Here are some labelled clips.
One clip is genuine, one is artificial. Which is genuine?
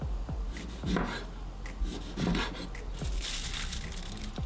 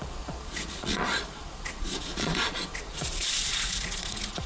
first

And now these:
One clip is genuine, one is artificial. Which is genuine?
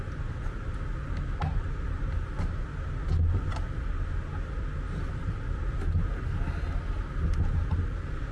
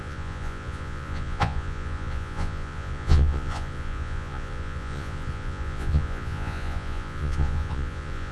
first